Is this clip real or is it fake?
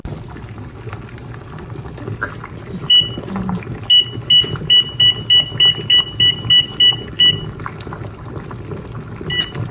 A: real